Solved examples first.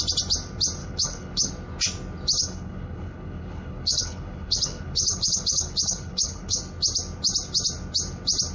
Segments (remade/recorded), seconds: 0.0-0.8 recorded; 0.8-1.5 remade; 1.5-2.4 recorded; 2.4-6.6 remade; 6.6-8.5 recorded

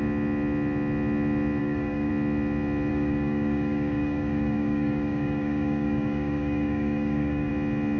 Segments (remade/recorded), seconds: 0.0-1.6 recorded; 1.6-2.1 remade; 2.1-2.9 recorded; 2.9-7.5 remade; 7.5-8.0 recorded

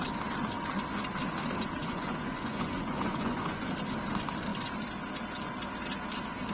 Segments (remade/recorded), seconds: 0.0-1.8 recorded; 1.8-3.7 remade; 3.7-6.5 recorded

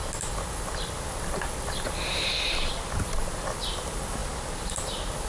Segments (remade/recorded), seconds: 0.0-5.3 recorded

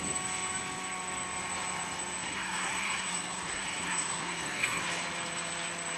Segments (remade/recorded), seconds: 0.0-2.2 recorded; 2.2-4.8 remade; 4.8-6.0 recorded